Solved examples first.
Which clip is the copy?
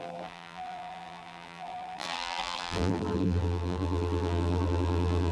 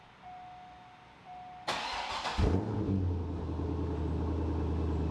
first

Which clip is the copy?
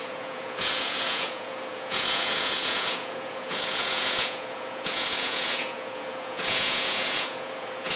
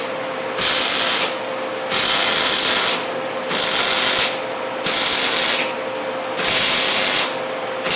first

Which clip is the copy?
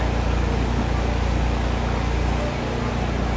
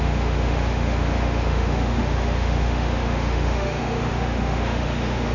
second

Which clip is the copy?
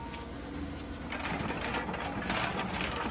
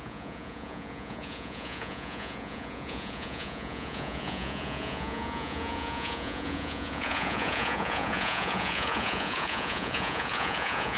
second